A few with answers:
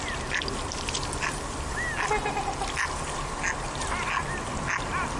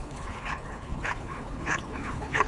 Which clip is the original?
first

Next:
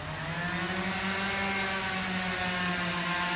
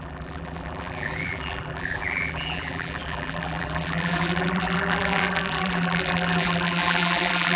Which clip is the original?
first